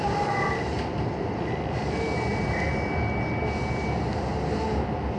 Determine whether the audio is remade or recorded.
recorded